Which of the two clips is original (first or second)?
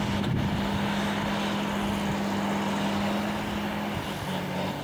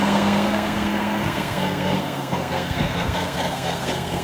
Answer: first